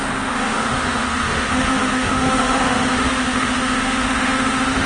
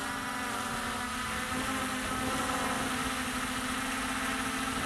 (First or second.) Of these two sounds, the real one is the second